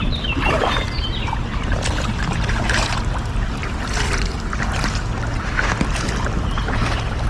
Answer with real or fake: real